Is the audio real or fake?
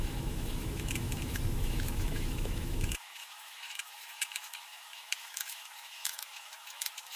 fake